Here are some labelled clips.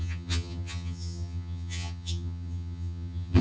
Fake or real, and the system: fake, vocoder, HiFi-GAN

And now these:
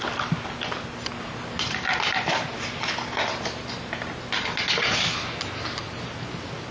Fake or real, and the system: real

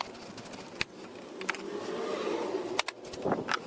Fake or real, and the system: real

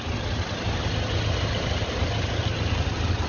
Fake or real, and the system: real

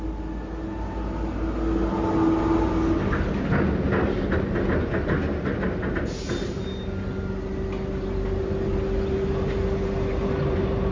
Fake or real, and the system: real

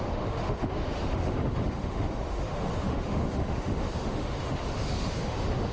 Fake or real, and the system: fake, autoencoder, DAC-VAE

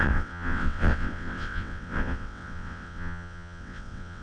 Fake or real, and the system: fake, vocoder, WaveNeXt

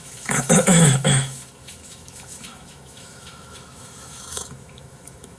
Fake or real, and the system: fake, autoencoder, DAC-VAE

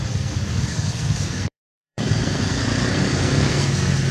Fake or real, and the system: fake, codec, SNAC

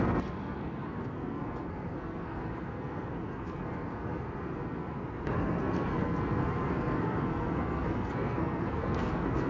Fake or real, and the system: fake, codec, SNAC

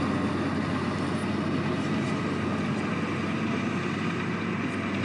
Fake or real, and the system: real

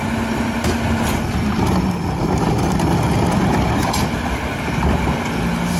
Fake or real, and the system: fake, vocoder, BigVGAN v2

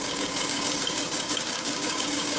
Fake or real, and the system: fake, codec, DAC